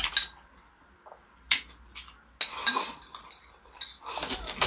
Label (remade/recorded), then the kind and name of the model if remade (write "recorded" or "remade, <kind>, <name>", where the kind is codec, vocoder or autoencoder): recorded